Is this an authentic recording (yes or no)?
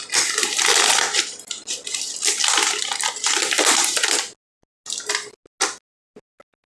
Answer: yes